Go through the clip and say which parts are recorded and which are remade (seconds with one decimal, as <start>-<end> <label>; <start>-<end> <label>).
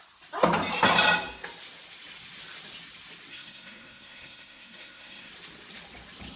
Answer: 0.0-3.3 recorded; 3.3-5.3 remade; 5.3-6.4 recorded